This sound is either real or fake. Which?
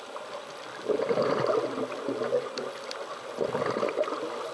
real